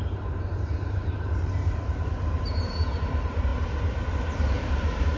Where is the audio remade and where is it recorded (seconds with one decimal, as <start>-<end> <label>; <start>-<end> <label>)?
0.0-3.5 remade; 3.5-4.2 recorded; 4.2-5.2 remade